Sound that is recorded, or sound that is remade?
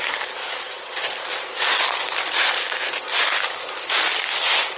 recorded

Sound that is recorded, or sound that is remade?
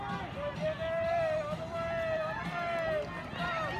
recorded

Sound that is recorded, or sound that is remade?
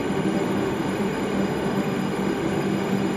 remade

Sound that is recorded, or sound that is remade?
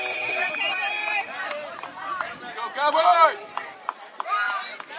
recorded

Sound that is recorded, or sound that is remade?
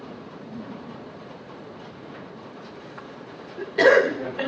remade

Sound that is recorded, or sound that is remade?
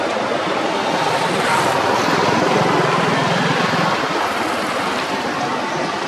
recorded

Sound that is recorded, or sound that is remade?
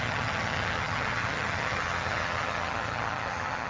remade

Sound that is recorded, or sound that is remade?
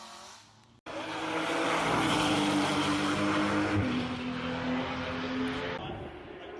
recorded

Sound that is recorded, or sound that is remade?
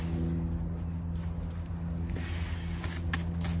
recorded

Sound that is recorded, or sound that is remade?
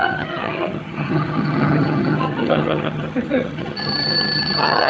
remade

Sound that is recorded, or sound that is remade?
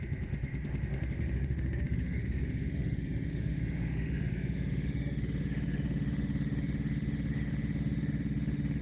remade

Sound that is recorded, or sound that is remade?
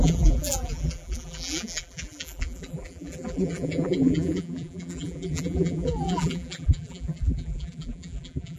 remade